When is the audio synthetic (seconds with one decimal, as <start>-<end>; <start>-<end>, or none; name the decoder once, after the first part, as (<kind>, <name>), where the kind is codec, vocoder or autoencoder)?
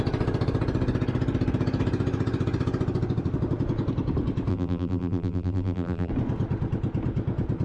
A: 4.5-6.1 (vocoder, BigVGAN v2)